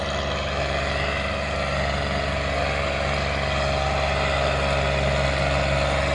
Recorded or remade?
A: recorded